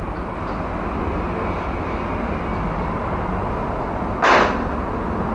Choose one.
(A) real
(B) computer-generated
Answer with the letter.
A